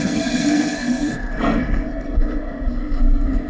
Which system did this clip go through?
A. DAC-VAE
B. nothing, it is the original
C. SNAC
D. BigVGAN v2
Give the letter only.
C